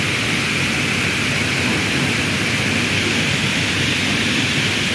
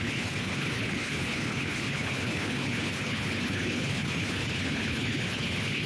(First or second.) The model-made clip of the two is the second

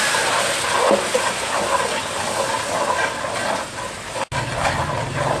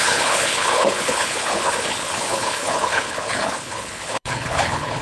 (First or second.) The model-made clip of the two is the second